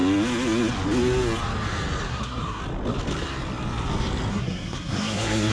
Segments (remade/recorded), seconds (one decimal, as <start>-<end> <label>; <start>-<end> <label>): 0.0-2.1 recorded; 2.1-2.6 remade; 2.6-4.3 recorded; 4.3-5.5 remade

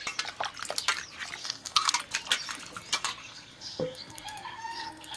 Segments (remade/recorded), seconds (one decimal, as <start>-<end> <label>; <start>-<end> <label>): 0.0-1.4 recorded; 1.4-1.9 remade; 1.9-3.2 recorded; 3.2-5.2 remade